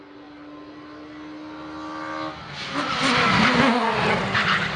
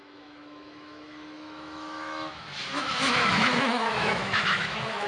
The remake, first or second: second